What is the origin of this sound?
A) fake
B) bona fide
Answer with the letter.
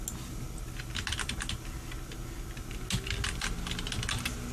B